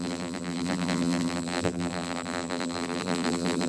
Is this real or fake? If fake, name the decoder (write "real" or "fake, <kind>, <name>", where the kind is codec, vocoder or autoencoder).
fake, vocoder, BigVGAN v2